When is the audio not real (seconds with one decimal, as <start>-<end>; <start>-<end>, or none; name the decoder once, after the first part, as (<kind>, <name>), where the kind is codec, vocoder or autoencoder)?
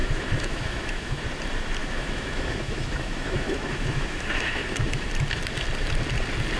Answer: 0.0-1.2 (autoencoder, DAC-VAE); 1.8-5.1